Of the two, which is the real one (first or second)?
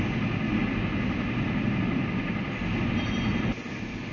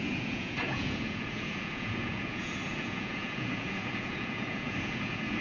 first